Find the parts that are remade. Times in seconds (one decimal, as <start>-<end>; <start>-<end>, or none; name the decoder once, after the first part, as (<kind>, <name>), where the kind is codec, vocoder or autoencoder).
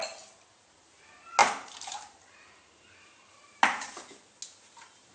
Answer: 1.4-3.6 (vocoder, BigVGAN v2)